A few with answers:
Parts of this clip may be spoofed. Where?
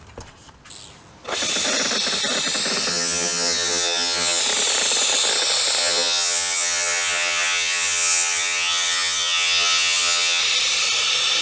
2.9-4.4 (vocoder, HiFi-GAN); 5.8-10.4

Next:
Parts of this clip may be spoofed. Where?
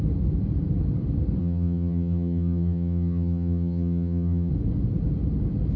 1.4-4.5 (vocoder, HiFi-GAN)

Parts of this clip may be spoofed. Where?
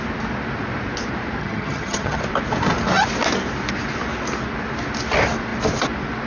1.4-2.2 (vocoder, HiFi-GAN)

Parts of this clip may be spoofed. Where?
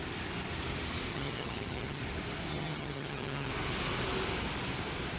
1.1-2.0 (vocoder, HiFi-GAN); 2.5-3.5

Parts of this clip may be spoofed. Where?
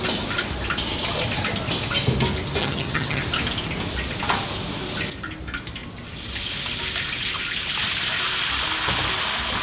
2.6-3.2 (vocoder, HiFi-GAN)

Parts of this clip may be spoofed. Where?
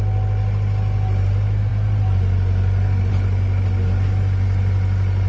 none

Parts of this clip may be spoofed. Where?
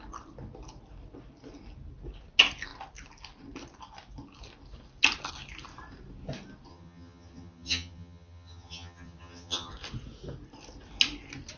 6.7-9.7 (vocoder, HiFi-GAN)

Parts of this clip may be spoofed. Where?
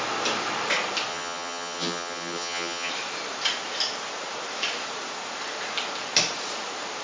1.1-2.9 (vocoder, HiFi-GAN)